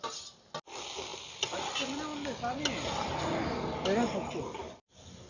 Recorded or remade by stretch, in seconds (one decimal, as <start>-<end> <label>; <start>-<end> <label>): 0.0-5.3 recorded